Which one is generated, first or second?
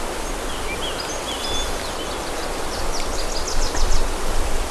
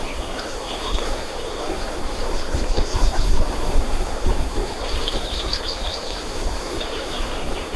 second